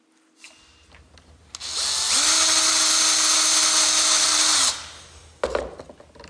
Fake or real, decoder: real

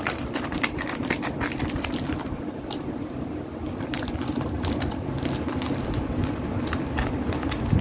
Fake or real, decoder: fake, vocoder, BigVGAN v2